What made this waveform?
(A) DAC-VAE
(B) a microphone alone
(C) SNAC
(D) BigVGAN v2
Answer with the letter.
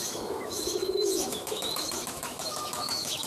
A